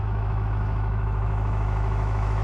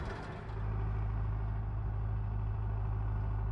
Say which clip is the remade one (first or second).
first